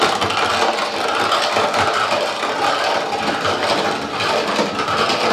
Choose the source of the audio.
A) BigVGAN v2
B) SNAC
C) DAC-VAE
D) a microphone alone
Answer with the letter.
D